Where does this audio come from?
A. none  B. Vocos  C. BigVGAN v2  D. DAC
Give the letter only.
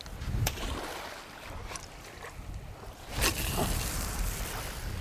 A